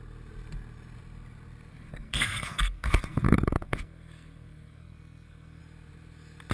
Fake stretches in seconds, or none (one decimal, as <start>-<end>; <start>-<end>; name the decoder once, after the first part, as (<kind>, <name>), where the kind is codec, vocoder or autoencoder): 1.7-5.6 (codec, SNAC)